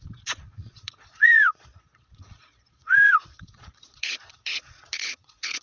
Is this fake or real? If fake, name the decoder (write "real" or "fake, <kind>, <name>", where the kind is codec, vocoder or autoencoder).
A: fake, vocoder, Vocos